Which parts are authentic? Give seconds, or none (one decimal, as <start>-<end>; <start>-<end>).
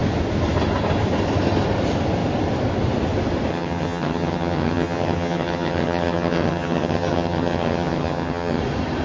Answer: 0.0-3.5; 8.6-9.0